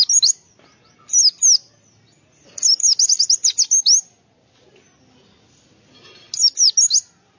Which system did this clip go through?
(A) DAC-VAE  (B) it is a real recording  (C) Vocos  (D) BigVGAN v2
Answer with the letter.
B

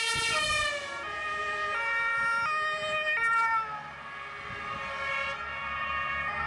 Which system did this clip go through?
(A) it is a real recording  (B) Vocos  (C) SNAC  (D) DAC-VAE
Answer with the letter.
A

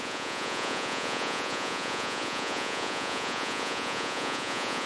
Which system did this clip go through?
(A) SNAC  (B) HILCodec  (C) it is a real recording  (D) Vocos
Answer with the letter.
D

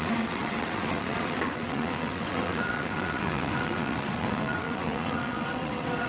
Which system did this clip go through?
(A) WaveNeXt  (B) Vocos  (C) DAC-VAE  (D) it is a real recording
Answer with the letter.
A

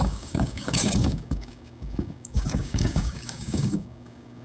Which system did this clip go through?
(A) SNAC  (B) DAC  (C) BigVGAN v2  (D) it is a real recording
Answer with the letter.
B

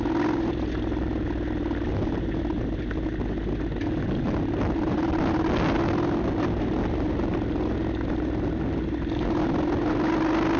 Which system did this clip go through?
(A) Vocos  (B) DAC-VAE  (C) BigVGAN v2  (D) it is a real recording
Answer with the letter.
D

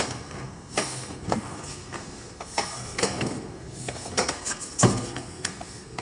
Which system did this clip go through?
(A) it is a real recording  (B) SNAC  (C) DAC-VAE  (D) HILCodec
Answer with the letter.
B